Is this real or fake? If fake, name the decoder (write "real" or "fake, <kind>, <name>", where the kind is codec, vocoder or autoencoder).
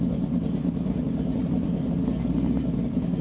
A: real